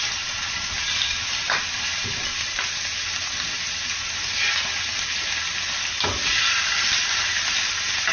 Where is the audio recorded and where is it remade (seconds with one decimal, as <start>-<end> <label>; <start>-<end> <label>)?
0.0-8.1 recorded